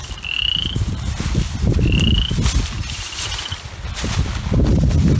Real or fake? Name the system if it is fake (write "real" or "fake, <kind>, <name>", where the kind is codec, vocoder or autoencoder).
real